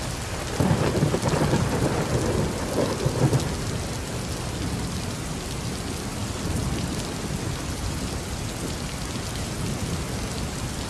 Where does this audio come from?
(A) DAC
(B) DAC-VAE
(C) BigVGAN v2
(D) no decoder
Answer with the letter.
D